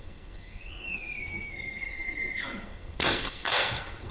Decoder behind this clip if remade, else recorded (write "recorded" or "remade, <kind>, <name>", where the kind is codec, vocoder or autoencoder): remade, codec, SNAC